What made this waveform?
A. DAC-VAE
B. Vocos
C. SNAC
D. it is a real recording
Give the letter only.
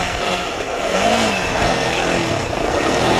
C